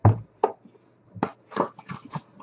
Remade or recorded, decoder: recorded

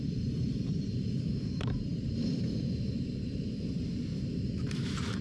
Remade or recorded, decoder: remade, vocoder, BigVGAN v2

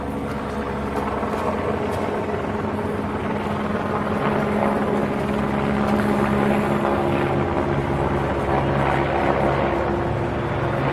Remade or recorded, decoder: recorded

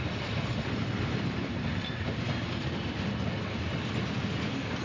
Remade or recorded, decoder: recorded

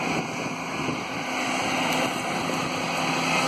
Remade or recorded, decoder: recorded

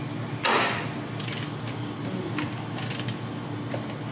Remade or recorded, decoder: recorded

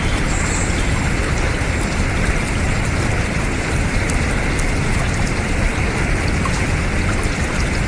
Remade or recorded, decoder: remade, vocoder, BigVGAN v2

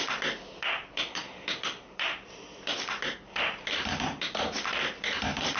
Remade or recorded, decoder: remade, vocoder, BigVGAN v2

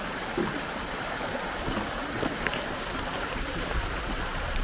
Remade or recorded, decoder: remade, vocoder, BigVGAN v2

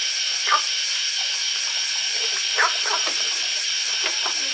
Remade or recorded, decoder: remade, vocoder, BigVGAN v2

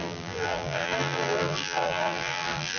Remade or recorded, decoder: remade, vocoder, BigVGAN v2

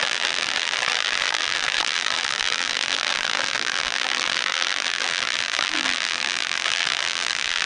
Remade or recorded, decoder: remade, vocoder, BigVGAN v2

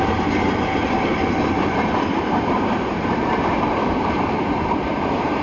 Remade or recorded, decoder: remade, vocoder, BigVGAN v2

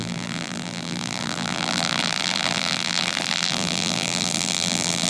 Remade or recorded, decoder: remade, vocoder, BigVGAN v2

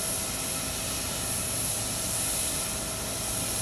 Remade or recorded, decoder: recorded